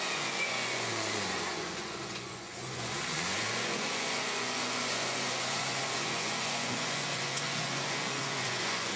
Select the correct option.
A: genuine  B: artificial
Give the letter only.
B